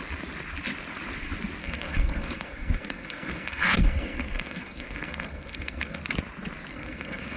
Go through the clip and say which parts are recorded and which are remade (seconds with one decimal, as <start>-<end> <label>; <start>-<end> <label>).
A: 0.0-1.6 recorded; 1.6-6.0 remade; 6.0-6.7 recorded; 6.7-7.4 remade